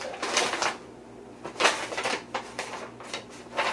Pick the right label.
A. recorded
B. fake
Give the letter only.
A